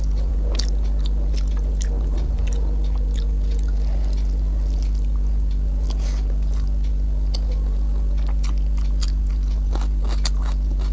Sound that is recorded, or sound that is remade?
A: recorded